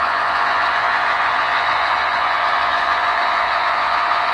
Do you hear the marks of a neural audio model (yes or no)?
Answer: yes